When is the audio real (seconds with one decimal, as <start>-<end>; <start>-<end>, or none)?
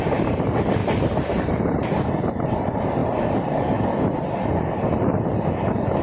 0.0-0.8; 2.2-6.0